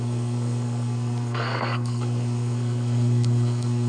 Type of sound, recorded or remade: remade